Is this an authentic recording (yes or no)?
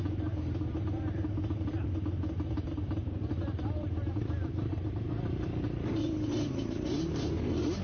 no